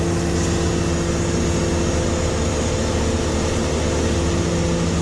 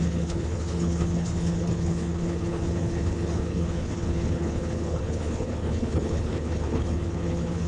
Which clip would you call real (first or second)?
first